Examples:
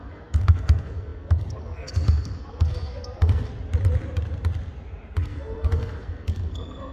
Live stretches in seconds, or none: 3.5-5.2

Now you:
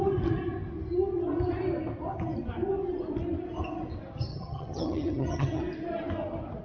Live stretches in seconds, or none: 0.0-4.3; 5.6-6.6

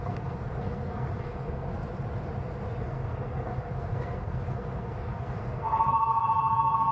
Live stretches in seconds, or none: 1.7-2.8

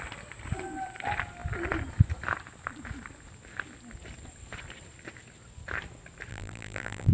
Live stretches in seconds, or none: 0.0-6.3

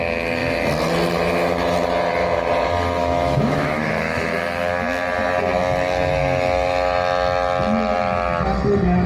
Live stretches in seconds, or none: 0.0-3.0; 4.7-9.1

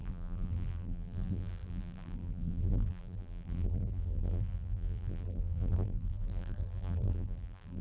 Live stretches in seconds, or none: none

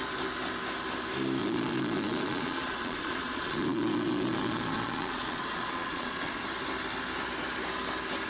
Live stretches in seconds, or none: 0.0-1.4; 6.4-8.3

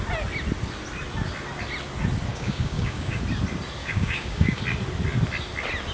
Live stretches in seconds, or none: 0.0-2.3; 3.2-3.8; 4.6-5.9